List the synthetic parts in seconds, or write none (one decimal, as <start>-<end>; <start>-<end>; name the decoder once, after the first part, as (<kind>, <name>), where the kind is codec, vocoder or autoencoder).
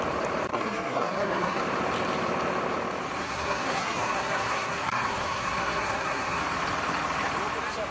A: 0.5-1.6 (codec, SNAC); 3.2-6.4